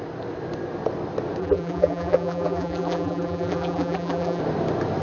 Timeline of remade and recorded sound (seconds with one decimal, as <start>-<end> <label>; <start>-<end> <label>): 0.0-1.4 recorded; 1.4-4.4 remade; 4.4-5.0 recorded